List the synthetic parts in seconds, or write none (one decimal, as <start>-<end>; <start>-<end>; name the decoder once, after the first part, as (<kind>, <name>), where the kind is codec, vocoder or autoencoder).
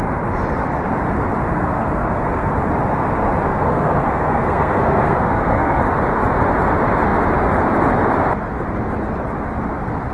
1.5-2.5 (codec, SNAC); 3.5-5.8